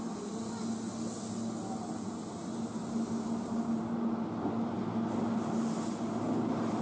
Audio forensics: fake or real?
real